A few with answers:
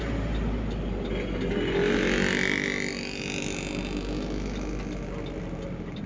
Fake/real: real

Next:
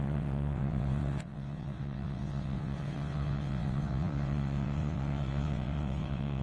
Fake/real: fake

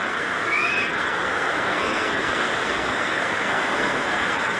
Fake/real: fake